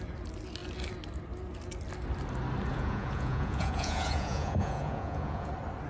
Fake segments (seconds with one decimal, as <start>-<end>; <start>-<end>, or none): 2.7-5.5